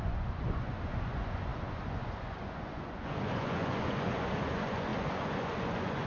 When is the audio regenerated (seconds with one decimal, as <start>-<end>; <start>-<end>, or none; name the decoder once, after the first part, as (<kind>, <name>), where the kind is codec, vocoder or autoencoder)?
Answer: 0.0-6.1 (vocoder, Vocos)